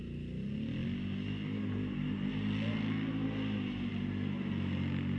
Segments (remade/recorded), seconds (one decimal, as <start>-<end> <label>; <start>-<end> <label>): 0.0-5.2 recorded